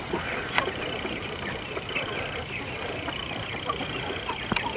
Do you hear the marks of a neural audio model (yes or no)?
no